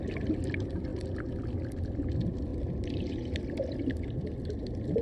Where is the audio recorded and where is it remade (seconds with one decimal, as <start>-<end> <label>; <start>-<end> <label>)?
0.0-2.5 recorded; 2.5-4.5 remade; 4.5-5.0 recorded